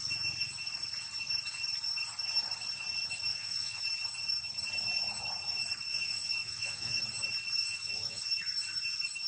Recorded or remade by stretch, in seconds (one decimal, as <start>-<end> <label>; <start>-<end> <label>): 0.0-3.3 recorded; 3.3-3.8 remade; 3.8-5.9 recorded; 5.9-7.0 remade; 7.0-7.6 recorded; 7.6-8.2 remade; 8.2-9.3 recorded